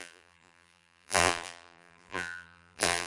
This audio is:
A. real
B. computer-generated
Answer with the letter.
B